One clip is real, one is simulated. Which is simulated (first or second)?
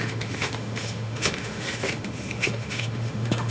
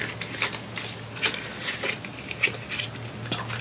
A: first